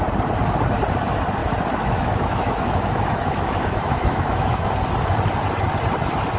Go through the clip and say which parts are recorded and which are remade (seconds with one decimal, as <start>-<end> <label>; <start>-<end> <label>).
0.0-1.4 recorded; 1.4-4.7 remade; 4.7-6.4 recorded